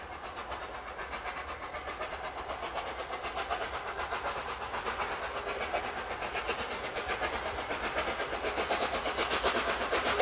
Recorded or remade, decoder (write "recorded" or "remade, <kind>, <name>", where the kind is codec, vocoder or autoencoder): recorded